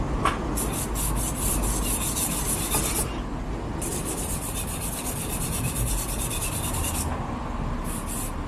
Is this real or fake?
real